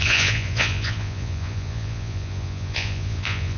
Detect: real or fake fake